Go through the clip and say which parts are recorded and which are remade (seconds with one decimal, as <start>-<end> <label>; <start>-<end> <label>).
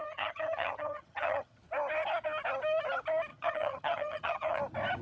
0.0-1.6 remade; 1.6-3.3 recorded; 3.3-4.6 remade; 4.6-5.0 recorded